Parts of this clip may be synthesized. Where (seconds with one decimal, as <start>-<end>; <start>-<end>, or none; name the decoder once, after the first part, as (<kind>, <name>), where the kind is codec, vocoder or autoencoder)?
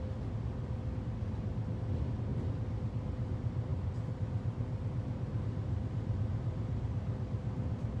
none